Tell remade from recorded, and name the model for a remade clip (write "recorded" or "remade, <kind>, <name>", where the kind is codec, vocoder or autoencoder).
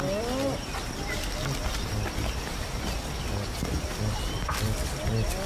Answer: recorded